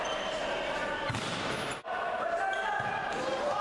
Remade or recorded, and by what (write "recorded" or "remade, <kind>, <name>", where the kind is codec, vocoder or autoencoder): remade, vocoder, BigVGAN v2